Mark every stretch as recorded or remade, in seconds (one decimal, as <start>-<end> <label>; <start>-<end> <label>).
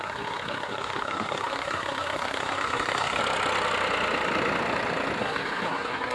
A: 0.0-3.2 remade; 3.2-5.2 recorded; 5.2-6.1 remade